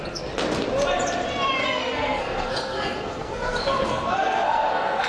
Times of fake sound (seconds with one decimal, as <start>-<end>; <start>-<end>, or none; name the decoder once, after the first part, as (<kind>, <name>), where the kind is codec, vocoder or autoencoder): 1.6-5.1 (codec, SNAC)